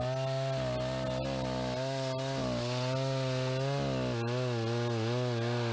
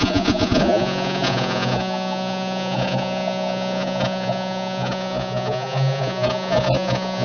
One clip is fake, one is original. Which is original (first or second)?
first